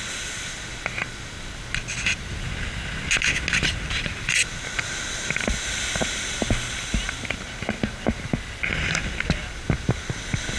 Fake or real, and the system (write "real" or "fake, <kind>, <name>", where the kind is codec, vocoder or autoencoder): real